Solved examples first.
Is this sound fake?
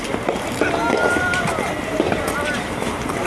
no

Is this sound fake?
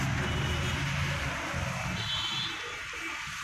no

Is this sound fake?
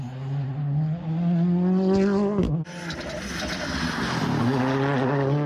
no